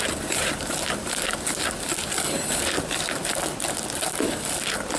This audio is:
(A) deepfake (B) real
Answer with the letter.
B